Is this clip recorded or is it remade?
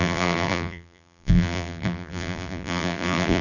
remade